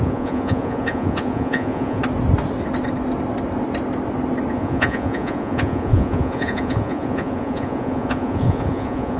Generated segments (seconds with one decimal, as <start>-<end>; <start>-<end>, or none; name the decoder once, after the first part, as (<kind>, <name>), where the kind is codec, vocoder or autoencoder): 0.0-2.0 (vocoder, Vocos); 4.5-9.2